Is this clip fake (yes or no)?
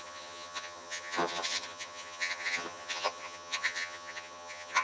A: yes